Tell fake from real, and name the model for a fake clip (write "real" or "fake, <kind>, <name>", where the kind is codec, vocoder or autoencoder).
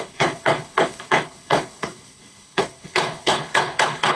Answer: fake, codec, HILCodec